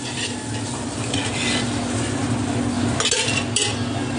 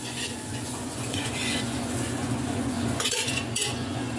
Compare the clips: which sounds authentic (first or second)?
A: first